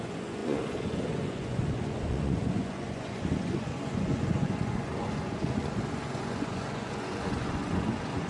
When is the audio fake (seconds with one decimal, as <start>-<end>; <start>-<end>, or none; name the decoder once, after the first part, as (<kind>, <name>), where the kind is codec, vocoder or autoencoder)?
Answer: 0.0-8.3 (vocoder, Vocos)